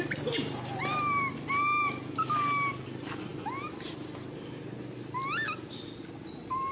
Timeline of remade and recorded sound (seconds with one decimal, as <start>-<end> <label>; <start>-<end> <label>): 0.0-6.7 recorded